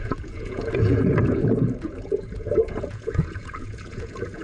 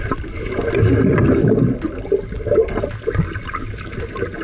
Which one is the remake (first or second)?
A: first